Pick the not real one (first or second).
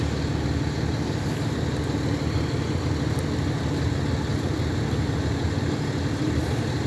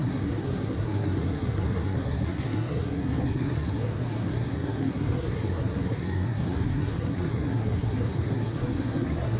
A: second